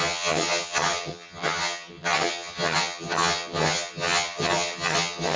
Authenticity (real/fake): fake